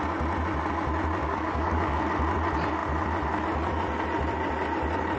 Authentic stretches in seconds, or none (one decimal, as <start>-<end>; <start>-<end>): 0.0-1.2; 2.0-5.2